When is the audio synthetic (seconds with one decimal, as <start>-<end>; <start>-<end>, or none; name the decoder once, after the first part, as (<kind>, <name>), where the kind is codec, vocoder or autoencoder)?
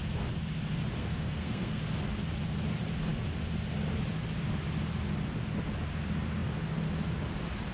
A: 1.0-1.8 (codec, SNAC)